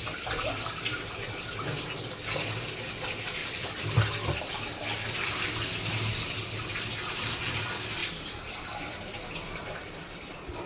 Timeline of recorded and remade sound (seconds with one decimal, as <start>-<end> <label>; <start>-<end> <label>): 0.0-3.4 recorded; 3.4-4.5 remade; 4.5-8.0 recorded; 8.0-10.7 remade